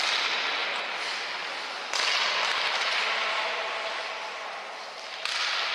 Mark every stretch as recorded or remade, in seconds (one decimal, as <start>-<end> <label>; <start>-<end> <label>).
0.0-5.7 recorded